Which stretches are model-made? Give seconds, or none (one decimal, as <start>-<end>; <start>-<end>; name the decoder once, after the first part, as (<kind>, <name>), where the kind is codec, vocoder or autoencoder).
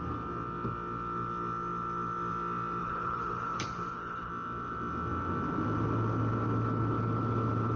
2.8-4.3 (codec, HILCodec)